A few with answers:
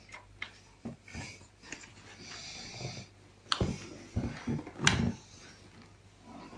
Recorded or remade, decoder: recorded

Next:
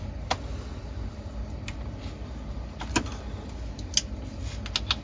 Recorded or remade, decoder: recorded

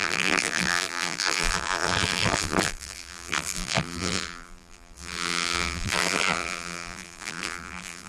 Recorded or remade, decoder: remade, vocoder, BigVGAN v2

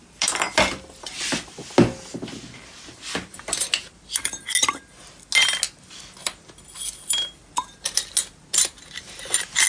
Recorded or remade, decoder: recorded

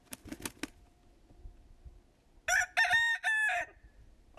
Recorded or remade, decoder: recorded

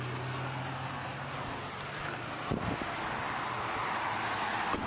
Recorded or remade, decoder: recorded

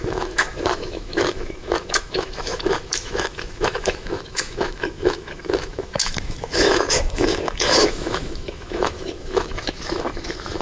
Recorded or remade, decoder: remade, autoencoder, DAC-VAE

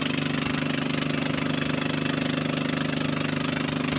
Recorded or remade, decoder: recorded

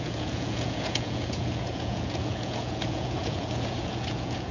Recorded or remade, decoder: remade, vocoder, Vocos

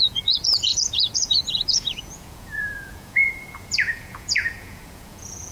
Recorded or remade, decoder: remade, vocoder, Vocos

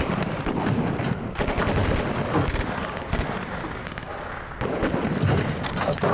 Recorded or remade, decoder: recorded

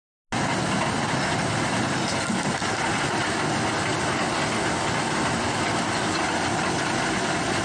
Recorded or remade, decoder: recorded